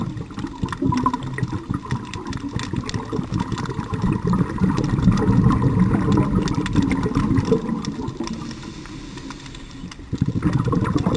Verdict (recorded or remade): recorded